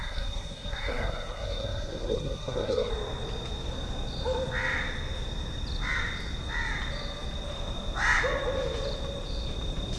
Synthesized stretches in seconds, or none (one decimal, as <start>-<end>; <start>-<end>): 0.0-2.9